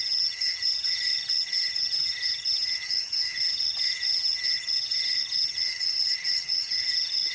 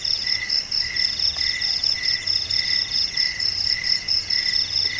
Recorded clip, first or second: second